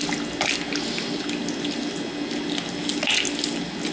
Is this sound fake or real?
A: real